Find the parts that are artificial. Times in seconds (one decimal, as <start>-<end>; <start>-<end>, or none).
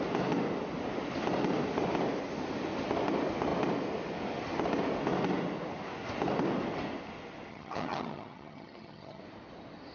7.5-9.2